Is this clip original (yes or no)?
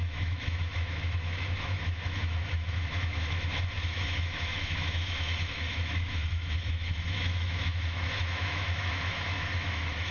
no